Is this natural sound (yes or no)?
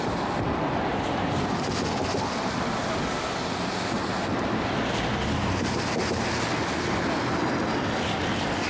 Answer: yes